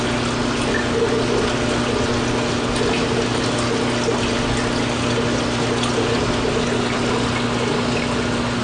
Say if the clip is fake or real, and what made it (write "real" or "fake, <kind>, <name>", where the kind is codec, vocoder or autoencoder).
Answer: real